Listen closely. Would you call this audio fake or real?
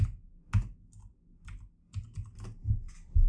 real